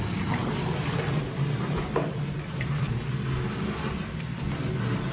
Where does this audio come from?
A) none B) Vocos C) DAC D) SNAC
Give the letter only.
A